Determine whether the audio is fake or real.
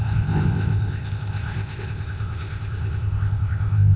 fake